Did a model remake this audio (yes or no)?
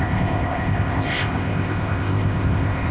yes